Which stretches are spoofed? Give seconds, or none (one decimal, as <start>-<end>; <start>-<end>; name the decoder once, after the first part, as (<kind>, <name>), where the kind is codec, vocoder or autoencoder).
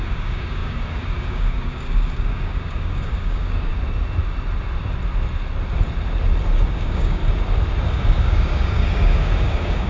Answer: 0.0-3.7 (codec, DAC); 6.7-7.2; 7.9-9.9